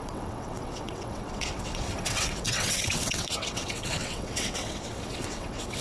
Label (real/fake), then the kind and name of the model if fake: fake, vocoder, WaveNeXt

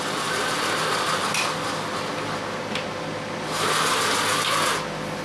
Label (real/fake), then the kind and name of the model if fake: real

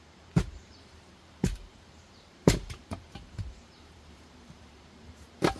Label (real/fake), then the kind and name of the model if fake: fake, vocoder, BigVGAN v2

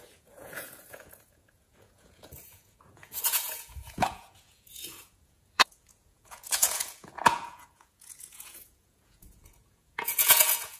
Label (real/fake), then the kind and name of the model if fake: fake, vocoder, Vocos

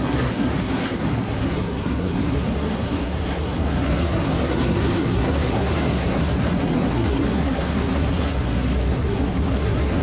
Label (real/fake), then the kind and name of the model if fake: fake, codec, SNAC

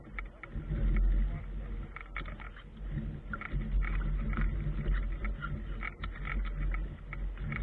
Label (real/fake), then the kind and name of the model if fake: real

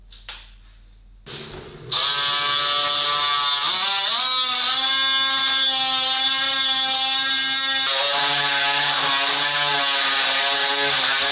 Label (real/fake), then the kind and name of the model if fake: real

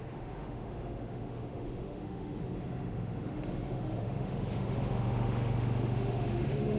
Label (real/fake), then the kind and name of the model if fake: fake, autoencoder, DAC-VAE